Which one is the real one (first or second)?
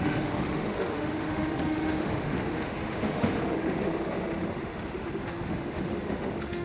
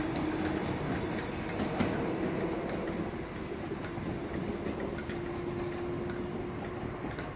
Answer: second